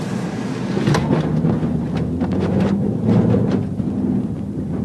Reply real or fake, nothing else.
real